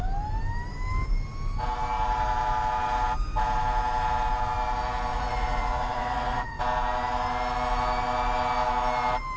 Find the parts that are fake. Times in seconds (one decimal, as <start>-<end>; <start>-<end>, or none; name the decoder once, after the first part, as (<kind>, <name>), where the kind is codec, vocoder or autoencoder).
5.1-6.6 (vocoder, Vocos)